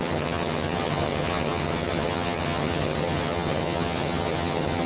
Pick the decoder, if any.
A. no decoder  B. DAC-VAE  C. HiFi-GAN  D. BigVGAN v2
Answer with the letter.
C